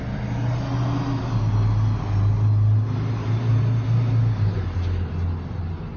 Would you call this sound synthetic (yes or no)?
no